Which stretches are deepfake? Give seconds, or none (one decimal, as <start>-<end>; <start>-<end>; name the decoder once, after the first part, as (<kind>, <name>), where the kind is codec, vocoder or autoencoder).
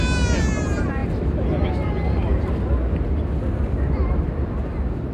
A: none